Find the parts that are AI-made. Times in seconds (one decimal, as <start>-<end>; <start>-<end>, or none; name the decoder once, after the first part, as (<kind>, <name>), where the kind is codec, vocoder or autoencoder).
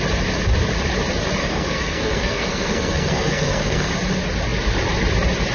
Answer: 1.4-3.9 (codec, SNAC)